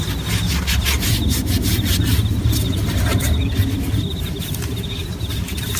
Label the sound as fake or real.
real